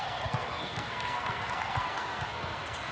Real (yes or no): no